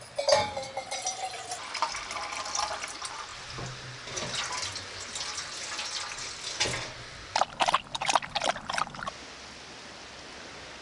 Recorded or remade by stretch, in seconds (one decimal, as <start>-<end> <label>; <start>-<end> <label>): 0.0-10.8 recorded